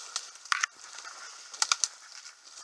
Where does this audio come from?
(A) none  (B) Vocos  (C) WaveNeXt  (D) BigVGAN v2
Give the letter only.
A